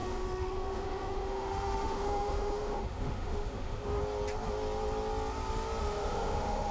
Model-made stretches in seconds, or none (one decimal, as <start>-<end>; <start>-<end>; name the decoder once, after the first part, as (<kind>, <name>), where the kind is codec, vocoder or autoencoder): 0.0-4.0 (autoencoder, DAC-VAE); 5.8-6.7